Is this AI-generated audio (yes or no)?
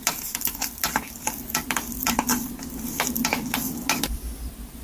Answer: no